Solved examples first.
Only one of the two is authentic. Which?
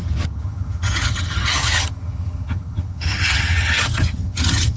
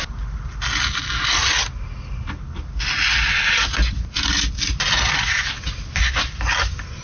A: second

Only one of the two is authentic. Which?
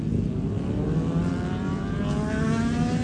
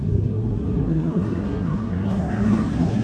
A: first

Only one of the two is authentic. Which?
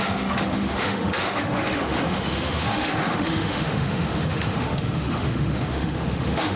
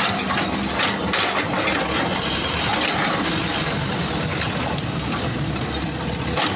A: second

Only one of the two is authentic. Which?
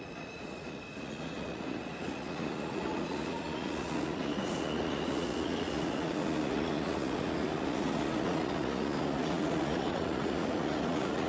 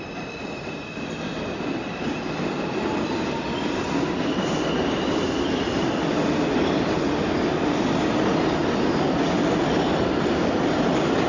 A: second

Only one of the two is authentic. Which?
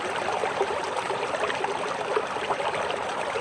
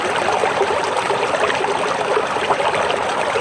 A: second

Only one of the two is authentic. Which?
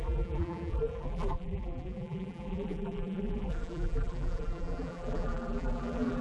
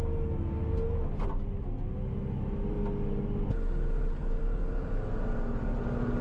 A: second